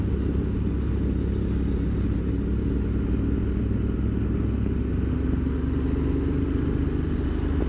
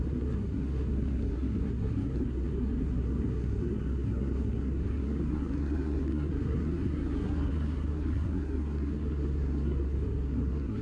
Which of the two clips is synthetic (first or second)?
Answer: second